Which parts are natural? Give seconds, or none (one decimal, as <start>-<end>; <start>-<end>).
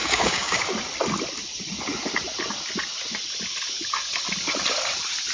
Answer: 0.6-5.3